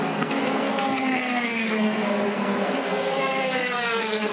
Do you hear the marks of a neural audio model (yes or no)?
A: yes